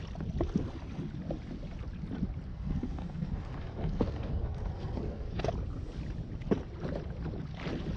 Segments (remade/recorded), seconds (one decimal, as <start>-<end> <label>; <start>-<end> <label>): 0.0-2.5 recorded; 2.5-5.5 remade; 5.5-8.0 recorded